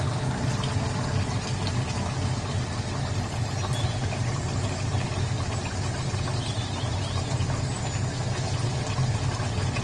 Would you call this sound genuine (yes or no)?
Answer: yes